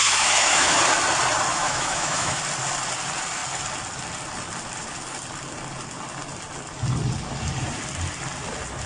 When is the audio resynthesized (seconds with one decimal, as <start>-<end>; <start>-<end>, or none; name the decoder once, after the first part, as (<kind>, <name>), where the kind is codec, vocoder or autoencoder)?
0.0-0.8 (autoencoder, DAC-VAE); 1.5-2.4